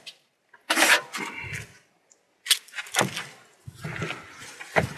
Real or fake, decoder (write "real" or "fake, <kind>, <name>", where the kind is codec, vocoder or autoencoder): real